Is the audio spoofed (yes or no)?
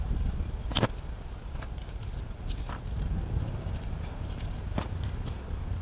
yes